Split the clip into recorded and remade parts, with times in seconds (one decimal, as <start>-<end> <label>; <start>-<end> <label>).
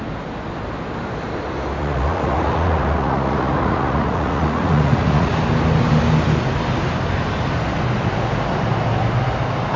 0.0-1.8 recorded; 1.8-5.3 remade; 5.3-9.8 recorded